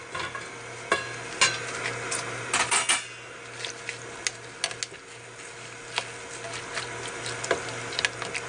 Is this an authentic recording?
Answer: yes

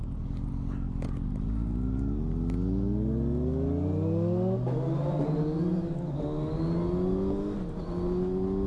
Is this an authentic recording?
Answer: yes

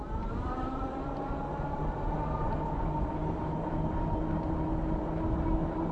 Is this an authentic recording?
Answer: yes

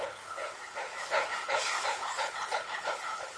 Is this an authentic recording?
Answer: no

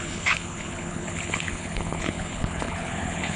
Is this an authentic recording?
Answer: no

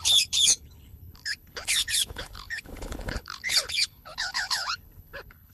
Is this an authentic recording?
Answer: no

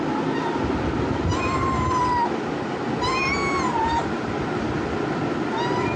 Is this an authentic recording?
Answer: yes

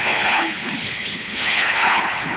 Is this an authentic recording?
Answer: no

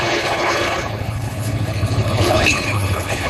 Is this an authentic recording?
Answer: no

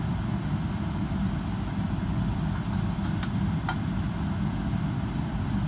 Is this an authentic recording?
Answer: yes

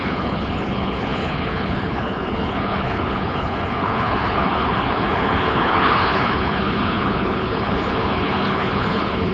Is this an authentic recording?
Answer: no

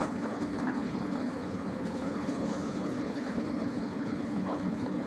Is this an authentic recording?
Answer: no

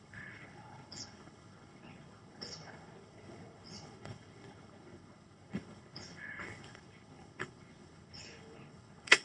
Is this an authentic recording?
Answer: no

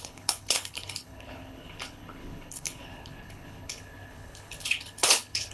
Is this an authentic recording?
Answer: no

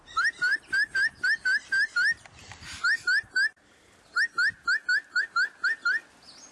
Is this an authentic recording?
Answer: yes